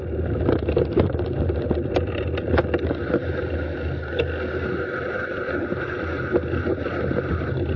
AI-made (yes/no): no